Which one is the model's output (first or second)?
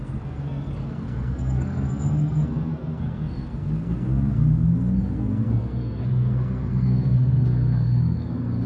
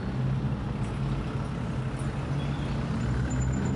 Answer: first